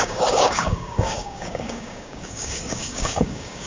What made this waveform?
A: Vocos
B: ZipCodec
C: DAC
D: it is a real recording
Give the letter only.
C